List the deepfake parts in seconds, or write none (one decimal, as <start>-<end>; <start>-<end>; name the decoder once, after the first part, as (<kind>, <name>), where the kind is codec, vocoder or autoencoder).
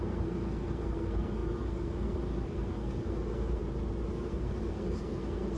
0.0-3.6 (codec, SNAC); 4.1-5.6